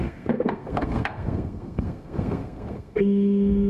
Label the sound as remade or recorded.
remade